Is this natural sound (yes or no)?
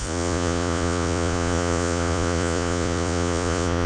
no